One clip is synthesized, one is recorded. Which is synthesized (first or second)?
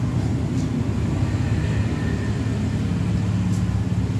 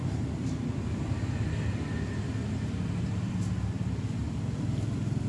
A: second